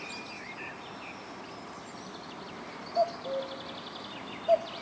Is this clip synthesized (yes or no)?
no